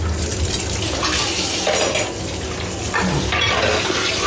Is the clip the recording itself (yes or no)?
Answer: yes